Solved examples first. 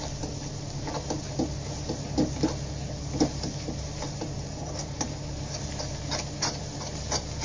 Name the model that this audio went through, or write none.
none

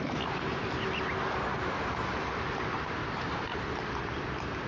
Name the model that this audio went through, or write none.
none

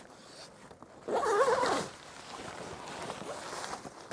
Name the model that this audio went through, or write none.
none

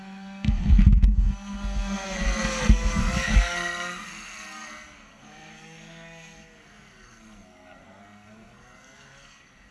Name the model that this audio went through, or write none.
codec, SNAC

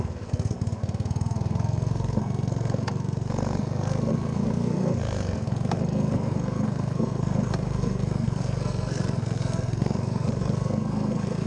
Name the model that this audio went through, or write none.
codec, SNAC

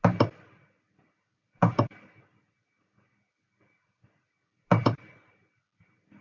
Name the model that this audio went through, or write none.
none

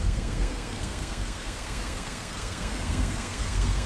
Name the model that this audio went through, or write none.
codec, SNAC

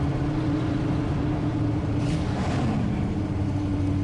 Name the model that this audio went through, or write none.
none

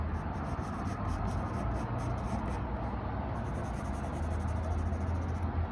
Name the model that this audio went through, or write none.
none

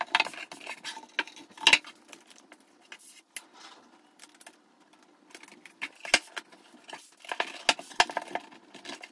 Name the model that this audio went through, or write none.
none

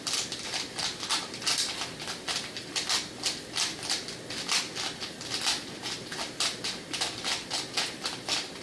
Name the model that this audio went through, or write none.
none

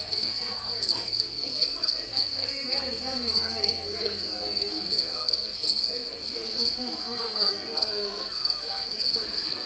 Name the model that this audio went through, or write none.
codec, SNAC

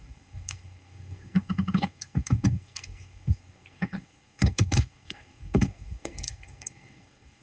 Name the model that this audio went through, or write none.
codec, SNAC